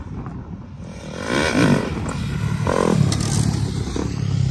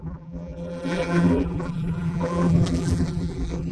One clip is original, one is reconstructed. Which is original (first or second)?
first